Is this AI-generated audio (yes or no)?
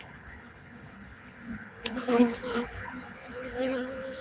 yes